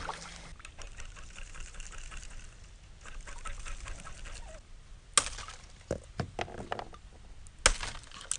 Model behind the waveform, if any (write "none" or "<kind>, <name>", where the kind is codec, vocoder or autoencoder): none